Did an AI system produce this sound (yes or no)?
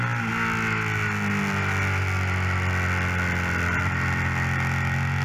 no